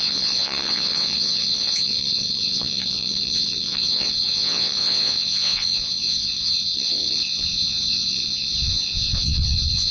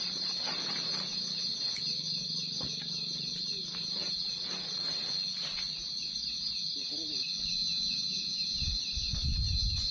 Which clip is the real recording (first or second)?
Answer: second